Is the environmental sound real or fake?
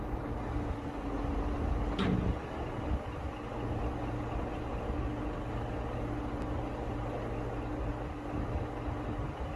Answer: real